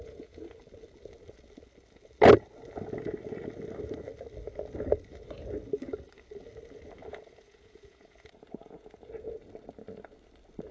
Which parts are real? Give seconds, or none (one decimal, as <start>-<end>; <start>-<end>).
0.6-7.0; 9.3-10.7